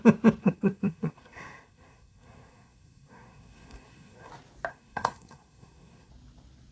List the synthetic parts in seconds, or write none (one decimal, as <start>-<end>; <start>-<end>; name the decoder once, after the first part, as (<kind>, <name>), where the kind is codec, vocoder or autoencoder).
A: 0.4-4.3 (codec, SNAC); 4.7-6.1